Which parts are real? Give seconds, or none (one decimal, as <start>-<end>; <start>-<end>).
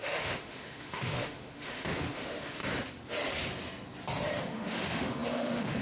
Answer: 2.6-4.4